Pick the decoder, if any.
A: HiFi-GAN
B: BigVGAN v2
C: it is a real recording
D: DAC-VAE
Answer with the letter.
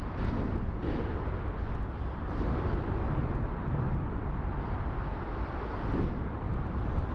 C